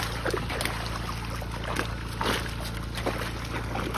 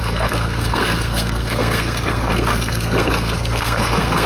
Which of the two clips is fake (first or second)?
second